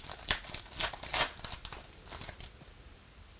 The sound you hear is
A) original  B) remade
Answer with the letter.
A